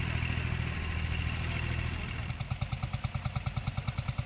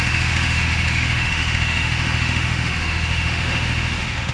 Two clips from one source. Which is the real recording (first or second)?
first